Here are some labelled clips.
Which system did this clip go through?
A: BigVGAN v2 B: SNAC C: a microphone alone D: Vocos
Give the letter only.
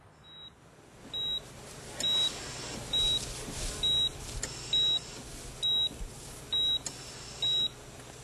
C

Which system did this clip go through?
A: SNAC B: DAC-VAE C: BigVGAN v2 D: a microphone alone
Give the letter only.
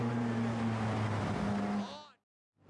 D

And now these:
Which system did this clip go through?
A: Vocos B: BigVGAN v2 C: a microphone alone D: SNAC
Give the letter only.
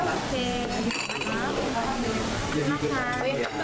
B